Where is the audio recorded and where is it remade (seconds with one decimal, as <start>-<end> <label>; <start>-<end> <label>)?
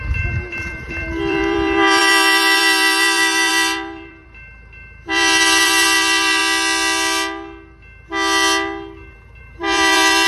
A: 0.0-6.4 remade; 6.4-9.4 recorded; 9.4-10.3 remade